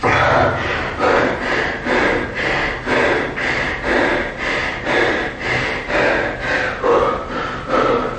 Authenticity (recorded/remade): recorded